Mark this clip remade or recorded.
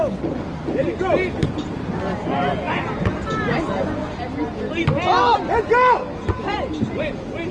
recorded